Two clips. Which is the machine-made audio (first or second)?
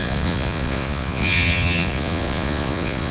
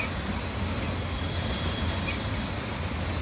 first